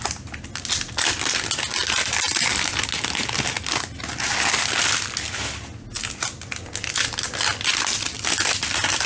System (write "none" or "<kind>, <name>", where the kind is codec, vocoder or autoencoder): none